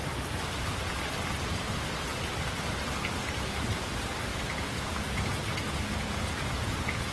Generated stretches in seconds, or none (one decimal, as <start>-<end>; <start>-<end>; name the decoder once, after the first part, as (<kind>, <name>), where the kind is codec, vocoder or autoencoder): 4.3-7.1 (vocoder, Vocos)